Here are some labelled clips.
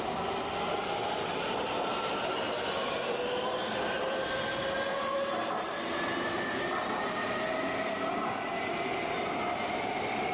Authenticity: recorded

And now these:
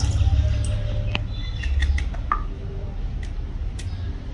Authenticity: recorded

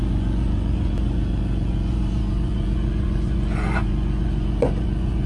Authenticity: remade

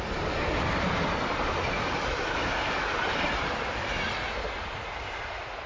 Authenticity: recorded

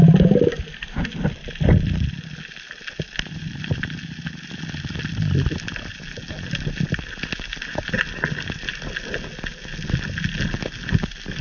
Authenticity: recorded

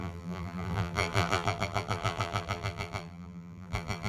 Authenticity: remade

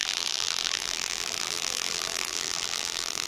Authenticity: remade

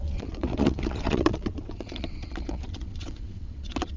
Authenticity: remade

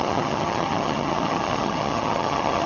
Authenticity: remade